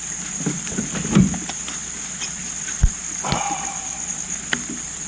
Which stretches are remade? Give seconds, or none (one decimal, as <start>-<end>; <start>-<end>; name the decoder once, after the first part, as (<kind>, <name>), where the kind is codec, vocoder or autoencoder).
none